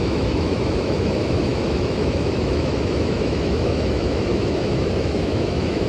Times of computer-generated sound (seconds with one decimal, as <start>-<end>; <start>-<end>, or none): 0.0-5.9